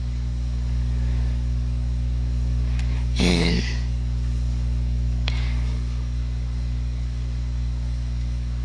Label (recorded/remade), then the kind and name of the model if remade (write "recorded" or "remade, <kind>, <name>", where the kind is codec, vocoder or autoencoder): remade, codec, DAC